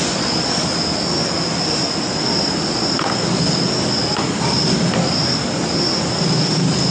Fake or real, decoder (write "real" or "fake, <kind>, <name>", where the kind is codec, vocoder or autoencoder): real